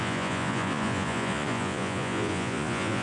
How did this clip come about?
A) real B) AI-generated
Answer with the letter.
B